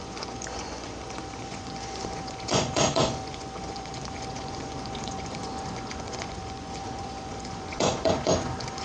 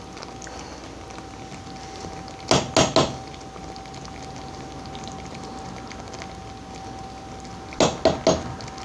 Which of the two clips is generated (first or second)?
first